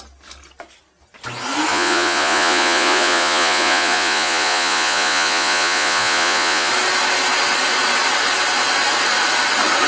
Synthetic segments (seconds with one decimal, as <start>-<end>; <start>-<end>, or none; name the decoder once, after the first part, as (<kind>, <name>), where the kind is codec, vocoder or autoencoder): 1.7-6.7 (vocoder, Vocos)